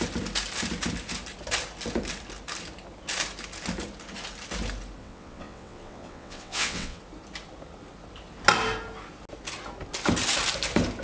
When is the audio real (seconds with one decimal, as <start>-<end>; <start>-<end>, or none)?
0.0-5.0; 7.0-11.0